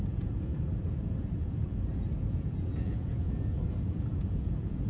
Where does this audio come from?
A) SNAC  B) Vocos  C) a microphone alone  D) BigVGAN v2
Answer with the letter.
B